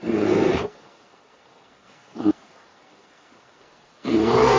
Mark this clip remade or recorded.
remade